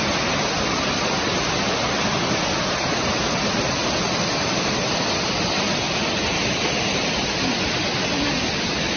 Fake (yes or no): no